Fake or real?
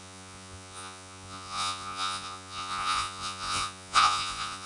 fake